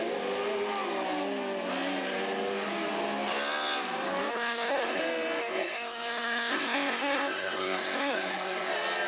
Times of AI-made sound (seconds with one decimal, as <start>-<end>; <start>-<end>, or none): 4.3-5.0; 5.4-8.7

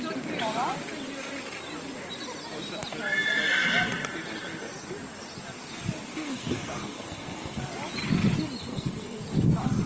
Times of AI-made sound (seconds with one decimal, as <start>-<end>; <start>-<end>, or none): 6.1-7.6; 8.7-9.2

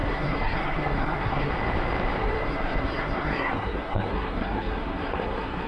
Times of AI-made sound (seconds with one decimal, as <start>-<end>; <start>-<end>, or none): 0.0-1.5; 2.2-5.7

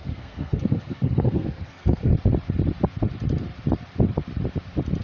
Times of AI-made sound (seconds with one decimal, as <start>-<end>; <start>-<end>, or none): 0.0-2.1

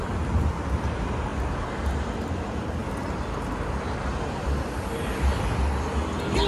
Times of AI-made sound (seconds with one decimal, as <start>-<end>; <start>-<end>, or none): none

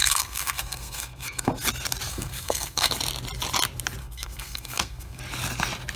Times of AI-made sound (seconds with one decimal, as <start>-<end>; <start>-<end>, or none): 0.0-1.5; 2.1-2.9; 4.0-5.2